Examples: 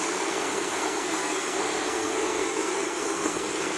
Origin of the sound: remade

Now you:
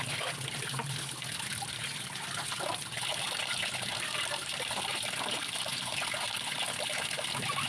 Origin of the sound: recorded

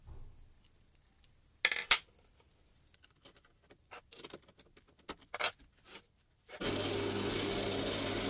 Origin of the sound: recorded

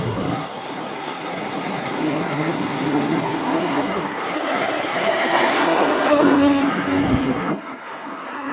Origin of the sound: remade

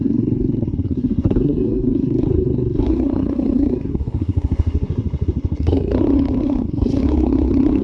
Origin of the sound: remade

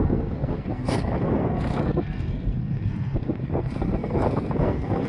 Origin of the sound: remade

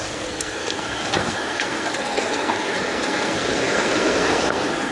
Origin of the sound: remade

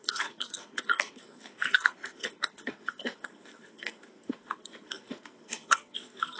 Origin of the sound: remade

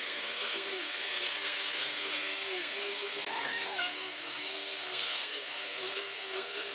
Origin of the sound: remade